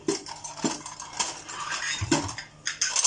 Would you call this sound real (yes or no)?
yes